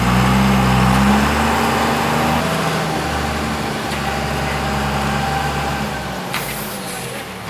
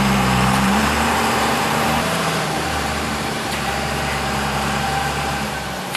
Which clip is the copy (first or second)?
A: second